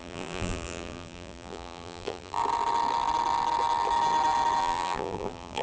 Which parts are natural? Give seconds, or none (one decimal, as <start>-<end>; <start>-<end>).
2.4-4.6